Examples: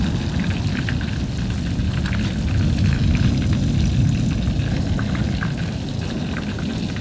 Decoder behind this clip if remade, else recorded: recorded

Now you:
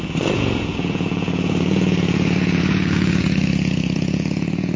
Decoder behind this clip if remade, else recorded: remade, vocoder, Vocos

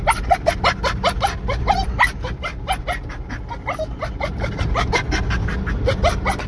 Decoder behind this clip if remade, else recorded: recorded